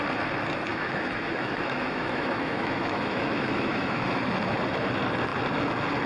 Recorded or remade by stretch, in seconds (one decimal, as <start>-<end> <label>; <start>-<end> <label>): 0.0-0.7 recorded; 0.7-4.2 remade; 4.2-6.1 recorded